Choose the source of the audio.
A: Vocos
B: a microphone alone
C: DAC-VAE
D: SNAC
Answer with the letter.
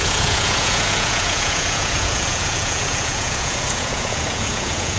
A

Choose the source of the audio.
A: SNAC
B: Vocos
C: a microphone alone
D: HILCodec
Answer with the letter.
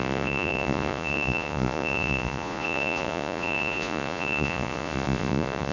B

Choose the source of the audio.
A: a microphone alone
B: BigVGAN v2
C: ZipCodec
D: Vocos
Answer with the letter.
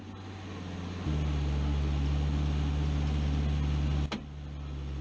A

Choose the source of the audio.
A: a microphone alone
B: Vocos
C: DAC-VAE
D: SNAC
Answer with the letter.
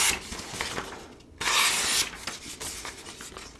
A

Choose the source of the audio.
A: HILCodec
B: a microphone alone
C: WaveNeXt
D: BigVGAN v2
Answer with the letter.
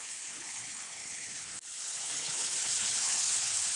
A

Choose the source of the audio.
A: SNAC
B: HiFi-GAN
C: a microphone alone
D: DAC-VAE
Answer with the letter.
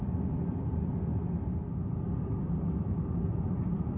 C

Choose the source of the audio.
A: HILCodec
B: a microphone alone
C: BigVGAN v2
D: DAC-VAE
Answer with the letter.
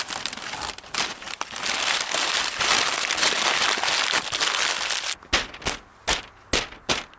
B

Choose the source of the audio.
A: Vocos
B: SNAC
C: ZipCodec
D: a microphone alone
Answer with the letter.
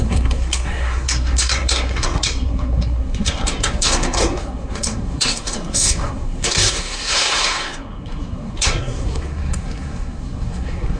B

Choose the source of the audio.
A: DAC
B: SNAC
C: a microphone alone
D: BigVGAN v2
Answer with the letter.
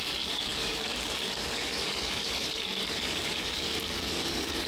A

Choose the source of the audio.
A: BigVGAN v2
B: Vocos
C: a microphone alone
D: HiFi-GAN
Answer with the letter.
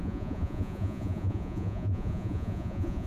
B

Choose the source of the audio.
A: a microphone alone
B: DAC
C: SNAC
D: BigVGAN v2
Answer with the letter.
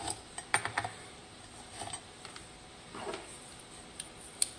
A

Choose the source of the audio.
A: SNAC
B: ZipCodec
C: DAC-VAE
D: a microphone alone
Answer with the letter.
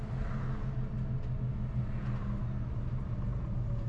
D